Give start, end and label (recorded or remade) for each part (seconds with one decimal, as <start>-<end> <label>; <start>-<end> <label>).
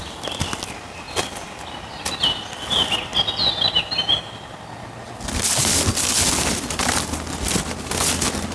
0.0-8.5 recorded